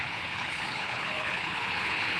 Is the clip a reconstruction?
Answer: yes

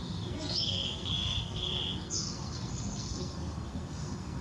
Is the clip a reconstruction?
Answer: yes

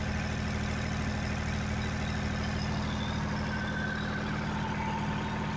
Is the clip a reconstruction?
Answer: no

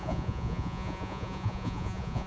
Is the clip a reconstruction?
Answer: yes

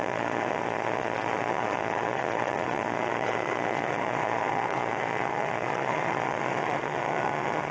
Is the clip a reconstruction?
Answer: yes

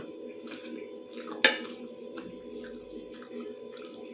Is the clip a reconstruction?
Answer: no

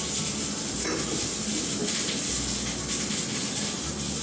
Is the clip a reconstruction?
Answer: no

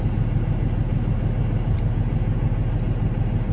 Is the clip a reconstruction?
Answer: no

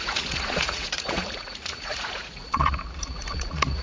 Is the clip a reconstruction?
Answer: yes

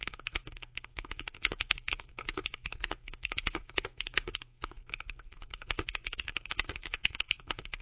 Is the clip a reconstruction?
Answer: yes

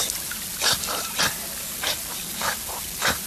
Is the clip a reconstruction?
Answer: no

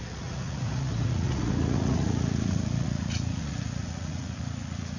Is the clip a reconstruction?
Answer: yes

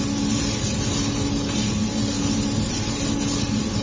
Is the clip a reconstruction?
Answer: no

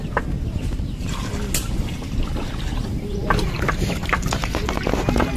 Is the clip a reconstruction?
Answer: no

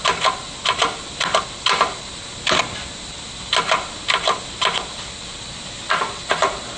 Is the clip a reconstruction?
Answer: no